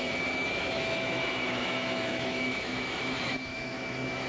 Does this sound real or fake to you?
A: fake